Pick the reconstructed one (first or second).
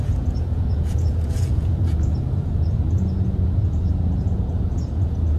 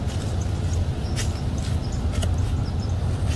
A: first